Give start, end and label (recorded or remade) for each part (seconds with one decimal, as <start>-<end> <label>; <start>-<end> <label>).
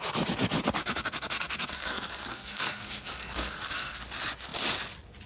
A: 0.0-0.8 recorded; 0.8-4.0 remade; 4.0-5.3 recorded